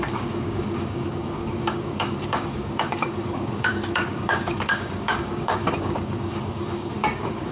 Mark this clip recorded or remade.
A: remade